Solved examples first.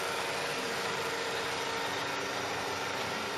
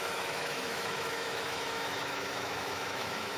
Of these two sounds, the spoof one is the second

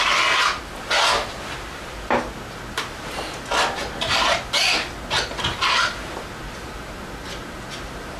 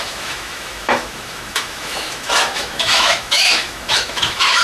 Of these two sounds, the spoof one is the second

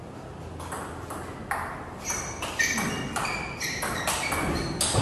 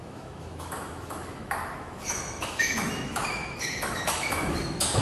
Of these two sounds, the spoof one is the second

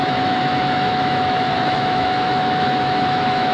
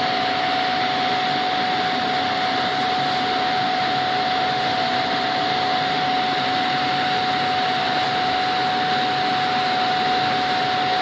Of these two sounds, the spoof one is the first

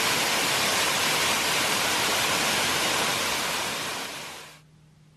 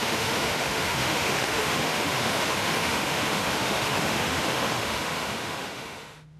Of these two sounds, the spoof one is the second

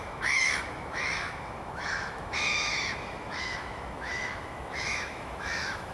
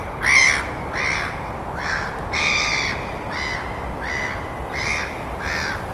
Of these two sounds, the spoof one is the first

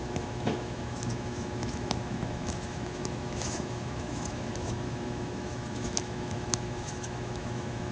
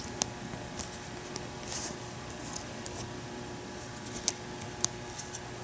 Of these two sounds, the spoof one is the first